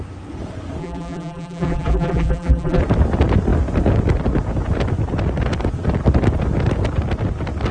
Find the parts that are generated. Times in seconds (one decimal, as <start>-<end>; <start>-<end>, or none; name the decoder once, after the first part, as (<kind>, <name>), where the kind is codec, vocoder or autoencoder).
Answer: 0.8-2.8 (vocoder, BigVGAN v2)